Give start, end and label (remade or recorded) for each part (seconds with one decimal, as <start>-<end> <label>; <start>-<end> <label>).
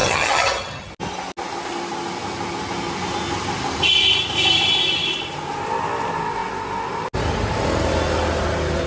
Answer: 0.0-0.9 remade; 0.9-8.9 recorded